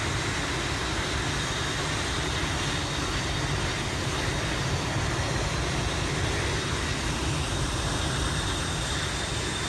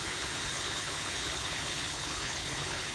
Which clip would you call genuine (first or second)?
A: first